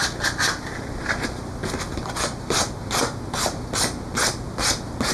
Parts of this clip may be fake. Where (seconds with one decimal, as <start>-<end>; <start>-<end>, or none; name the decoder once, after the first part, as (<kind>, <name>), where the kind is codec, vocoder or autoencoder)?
0.5-1.6 (vocoder, BigVGAN v2)